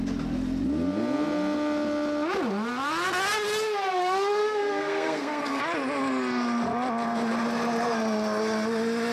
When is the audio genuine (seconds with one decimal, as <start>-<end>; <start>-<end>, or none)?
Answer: 0.0-4.4; 5.6-9.1